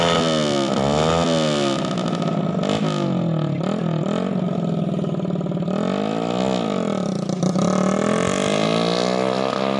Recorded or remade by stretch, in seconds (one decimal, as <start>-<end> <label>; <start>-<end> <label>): 0.0-9.8 recorded